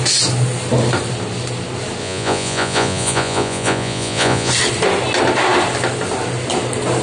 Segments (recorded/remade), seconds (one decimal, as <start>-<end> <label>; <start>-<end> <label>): 0.0-2.0 recorded; 2.0-4.5 remade; 4.5-7.0 recorded